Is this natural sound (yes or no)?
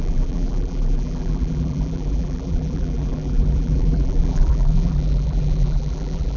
no